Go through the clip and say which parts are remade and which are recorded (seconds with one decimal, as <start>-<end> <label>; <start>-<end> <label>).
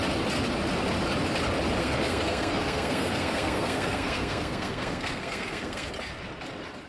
0.0-1.8 recorded; 1.8-5.9 remade; 5.9-6.9 recorded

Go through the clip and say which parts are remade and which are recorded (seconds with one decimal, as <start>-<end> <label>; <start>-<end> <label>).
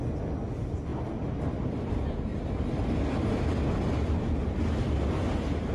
0.0-0.9 recorded; 0.9-1.9 remade; 1.9-5.7 recorded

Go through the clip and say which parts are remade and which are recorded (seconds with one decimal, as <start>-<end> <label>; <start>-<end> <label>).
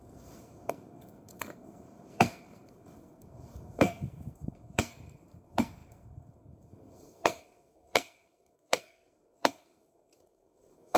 0.0-11.0 remade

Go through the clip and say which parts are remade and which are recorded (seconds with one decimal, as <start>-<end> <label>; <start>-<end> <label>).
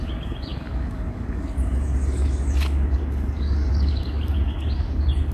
0.0-5.3 remade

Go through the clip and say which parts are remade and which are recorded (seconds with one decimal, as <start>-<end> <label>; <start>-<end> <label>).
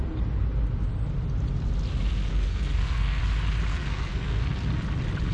0.0-2.3 recorded; 2.3-3.2 remade; 3.2-3.7 recorded; 3.7-4.7 remade; 4.7-5.3 recorded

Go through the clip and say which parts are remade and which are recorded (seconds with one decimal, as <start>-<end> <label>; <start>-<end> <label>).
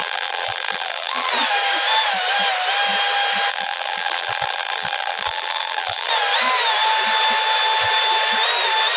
0.0-1.3 remade; 1.3-3.5 recorded; 3.5-6.1 remade; 6.1-9.0 recorded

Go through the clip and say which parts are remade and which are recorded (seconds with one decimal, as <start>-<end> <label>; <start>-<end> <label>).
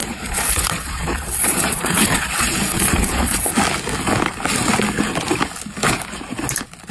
0.0-3.5 remade; 3.5-6.9 recorded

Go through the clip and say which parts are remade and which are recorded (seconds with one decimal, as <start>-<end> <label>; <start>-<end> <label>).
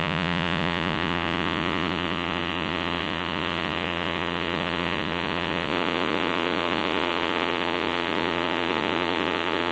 0.0-9.7 remade